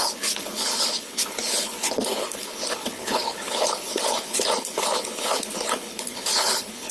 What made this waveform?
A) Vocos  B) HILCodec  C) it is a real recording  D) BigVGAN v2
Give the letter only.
B